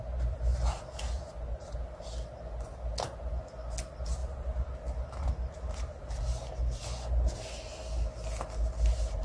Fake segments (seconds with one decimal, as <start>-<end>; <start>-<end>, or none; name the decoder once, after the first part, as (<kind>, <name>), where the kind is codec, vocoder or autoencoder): none